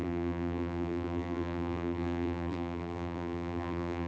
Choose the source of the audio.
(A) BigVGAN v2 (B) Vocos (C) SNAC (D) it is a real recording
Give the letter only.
A